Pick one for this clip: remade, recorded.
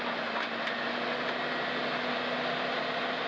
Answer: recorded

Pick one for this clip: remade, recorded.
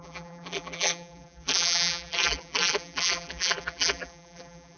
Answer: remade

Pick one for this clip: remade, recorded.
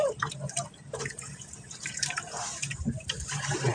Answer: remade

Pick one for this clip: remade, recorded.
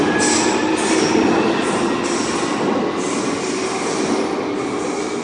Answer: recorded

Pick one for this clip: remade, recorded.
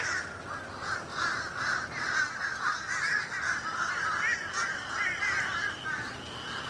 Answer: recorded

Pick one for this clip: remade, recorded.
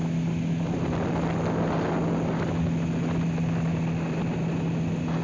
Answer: recorded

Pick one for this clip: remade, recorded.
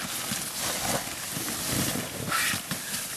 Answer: recorded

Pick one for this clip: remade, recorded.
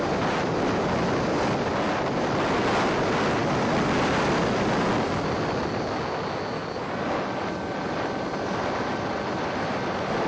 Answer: recorded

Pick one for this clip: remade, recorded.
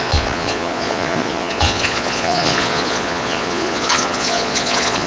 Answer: remade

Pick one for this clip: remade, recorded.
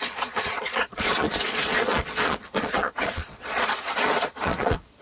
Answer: remade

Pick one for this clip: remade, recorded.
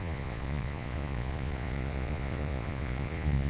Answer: remade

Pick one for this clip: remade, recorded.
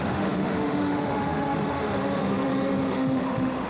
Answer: remade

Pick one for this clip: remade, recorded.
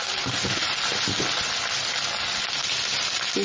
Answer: recorded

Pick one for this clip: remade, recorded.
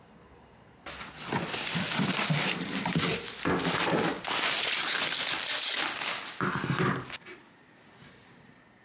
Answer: recorded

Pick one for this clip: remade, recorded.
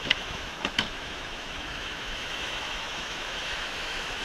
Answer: remade